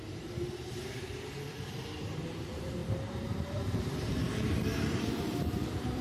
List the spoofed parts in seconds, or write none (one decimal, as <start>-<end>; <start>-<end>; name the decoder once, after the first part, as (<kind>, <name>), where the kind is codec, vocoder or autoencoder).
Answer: 0.0-6.0 (vocoder, BigVGAN v2)